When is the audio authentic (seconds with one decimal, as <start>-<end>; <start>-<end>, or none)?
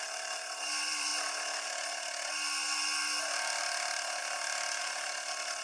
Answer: 1.1-3.6; 4.2-4.8